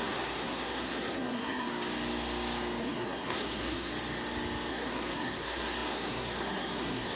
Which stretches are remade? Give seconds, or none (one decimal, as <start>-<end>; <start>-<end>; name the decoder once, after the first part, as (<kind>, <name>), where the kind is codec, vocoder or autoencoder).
0.0-1.7 (codec, SNAC); 2.8-3.9; 4.7-7.2